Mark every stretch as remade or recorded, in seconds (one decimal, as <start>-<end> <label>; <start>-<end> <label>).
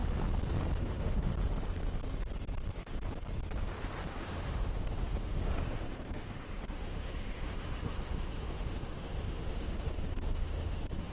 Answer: 0.0-0.8 recorded; 0.8-1.3 remade; 1.3-4.1 recorded; 4.1-11.1 remade